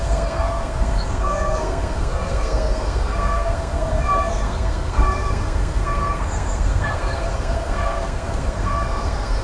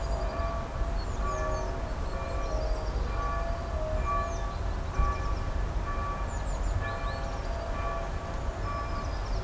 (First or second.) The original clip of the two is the second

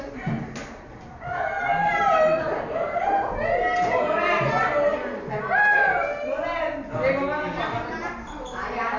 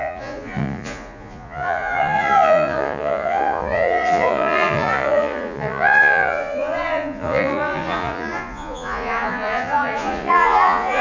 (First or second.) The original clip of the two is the first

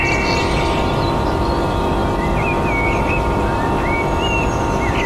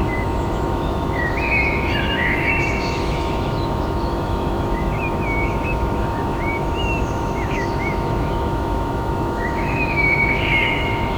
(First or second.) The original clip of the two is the first